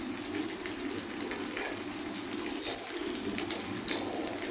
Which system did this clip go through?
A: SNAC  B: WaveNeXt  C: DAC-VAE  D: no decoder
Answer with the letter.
D